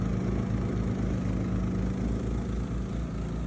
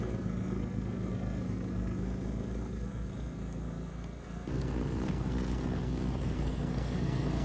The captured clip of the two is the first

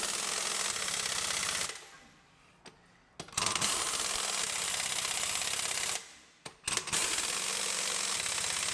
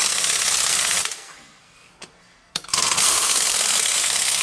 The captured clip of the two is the first